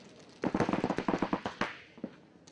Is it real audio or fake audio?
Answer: real